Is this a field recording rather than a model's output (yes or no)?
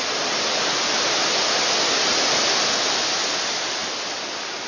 yes